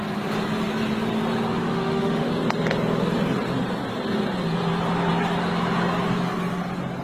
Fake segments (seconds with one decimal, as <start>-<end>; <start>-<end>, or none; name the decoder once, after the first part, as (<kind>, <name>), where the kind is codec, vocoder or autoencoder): 1.6-2.3 (autoencoder, DAC-VAE)